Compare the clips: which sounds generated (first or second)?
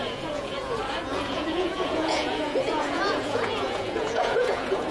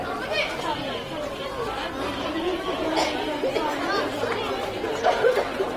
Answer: first